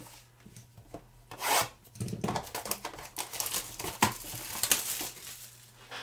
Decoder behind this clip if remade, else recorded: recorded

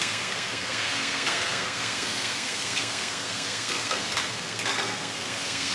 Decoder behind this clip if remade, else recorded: remade, codec, SNAC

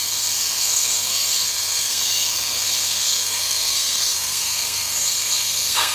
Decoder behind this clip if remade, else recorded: remade, codec, SNAC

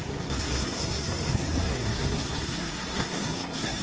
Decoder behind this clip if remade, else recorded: remade, codec, SNAC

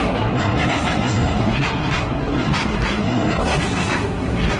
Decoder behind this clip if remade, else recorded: remade, codec, SNAC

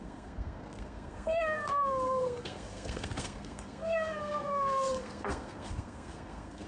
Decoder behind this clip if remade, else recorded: remade, codec, SNAC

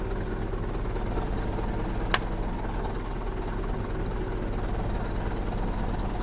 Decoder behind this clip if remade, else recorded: recorded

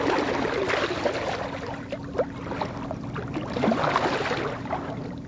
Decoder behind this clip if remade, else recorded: recorded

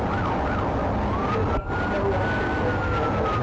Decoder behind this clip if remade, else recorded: recorded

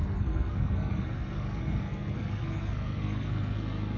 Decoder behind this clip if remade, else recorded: remade, codec, SNAC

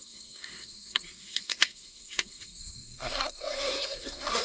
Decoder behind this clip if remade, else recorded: remade, codec, SNAC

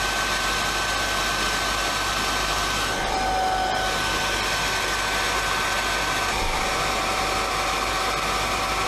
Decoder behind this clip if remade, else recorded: recorded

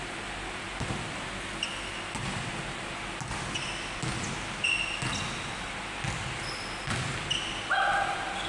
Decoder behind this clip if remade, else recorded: recorded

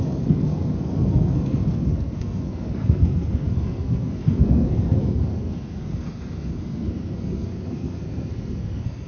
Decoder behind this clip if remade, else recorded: remade, codec, SNAC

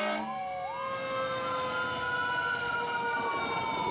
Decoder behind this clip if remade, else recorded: recorded